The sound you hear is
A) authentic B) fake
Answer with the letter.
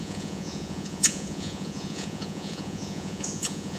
B